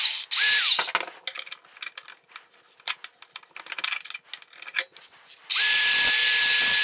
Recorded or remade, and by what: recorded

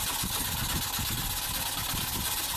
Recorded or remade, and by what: recorded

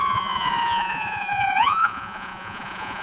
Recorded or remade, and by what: remade, vocoder, Vocos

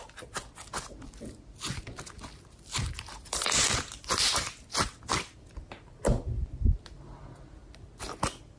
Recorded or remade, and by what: recorded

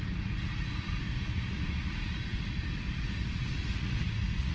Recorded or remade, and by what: remade, vocoder, Vocos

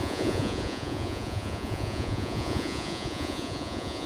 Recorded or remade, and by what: remade, vocoder, Vocos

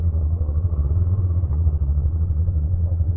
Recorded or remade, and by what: remade, vocoder, Vocos